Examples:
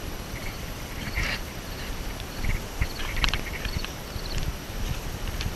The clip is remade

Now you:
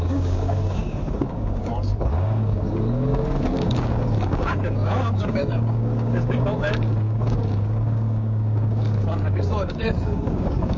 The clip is remade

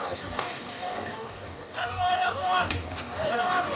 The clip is remade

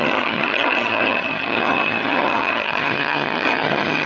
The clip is remade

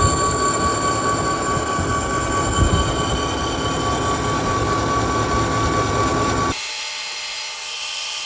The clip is recorded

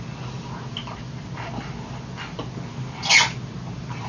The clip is recorded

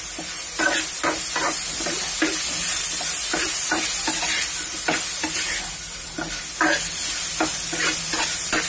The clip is recorded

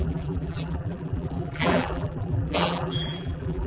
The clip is remade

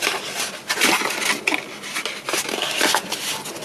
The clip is recorded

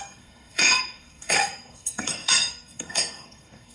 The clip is remade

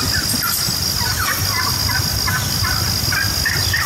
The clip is recorded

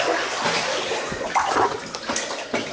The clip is recorded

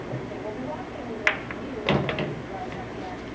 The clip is recorded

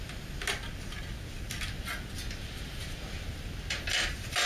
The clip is recorded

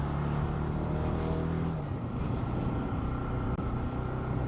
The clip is recorded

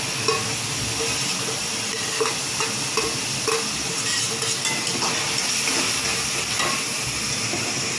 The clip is recorded